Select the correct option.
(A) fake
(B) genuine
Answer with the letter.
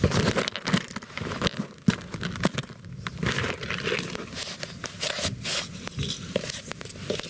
B